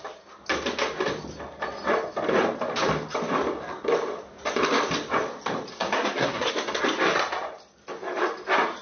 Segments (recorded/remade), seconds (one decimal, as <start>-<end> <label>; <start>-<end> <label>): 0.0-5.7 recorded; 5.7-6.5 remade; 6.5-8.8 recorded